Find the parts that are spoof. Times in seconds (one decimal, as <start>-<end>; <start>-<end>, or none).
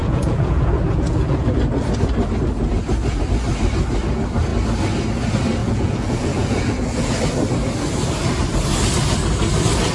0.0-1.6; 5.6-7.2